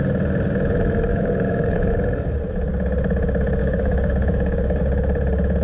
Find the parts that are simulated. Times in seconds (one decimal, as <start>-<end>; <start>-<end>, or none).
1.1-1.9; 3.6-4.8